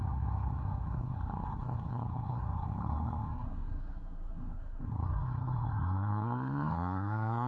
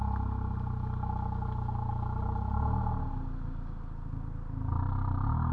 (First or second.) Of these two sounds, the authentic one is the second